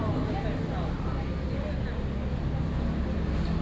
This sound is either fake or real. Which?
real